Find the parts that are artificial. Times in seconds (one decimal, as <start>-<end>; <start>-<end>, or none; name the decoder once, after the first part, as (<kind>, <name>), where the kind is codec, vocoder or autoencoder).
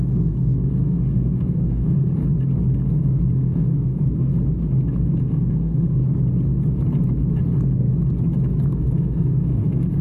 0.0-2.2 (codec, SNAC); 2.9-4.3; 5.2-6.0; 8.7-10.0